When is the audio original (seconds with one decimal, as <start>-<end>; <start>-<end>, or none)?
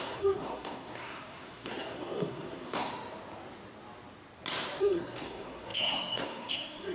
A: 2.9-4.8